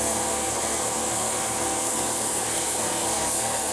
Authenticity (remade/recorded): remade